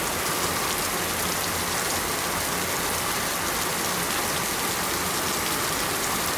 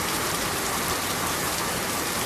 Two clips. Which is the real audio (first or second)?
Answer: first